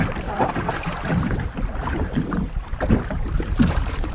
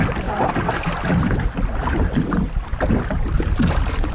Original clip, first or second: second